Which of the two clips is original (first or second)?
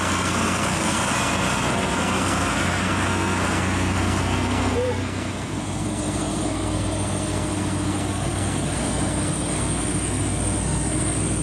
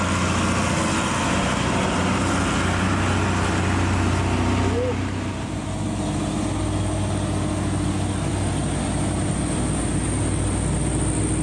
second